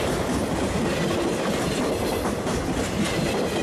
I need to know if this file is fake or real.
real